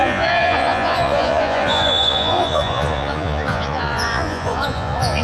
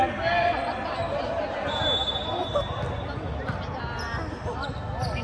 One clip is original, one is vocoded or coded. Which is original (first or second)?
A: second